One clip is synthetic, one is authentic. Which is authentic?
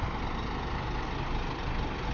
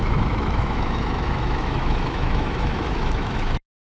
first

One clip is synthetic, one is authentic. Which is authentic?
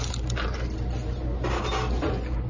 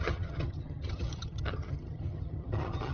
first